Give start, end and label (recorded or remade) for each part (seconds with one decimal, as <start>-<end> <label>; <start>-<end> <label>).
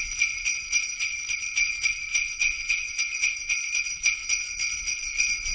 0.0-2.1 recorded; 2.1-3.5 remade; 3.5-4.0 recorded; 4.0-4.6 remade; 4.6-5.5 recorded